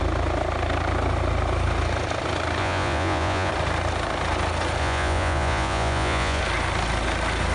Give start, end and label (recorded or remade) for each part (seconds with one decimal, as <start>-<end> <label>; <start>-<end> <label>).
0.0-2.6 recorded; 2.6-3.5 remade; 3.5-4.8 recorded; 4.8-6.4 remade; 6.4-7.5 recorded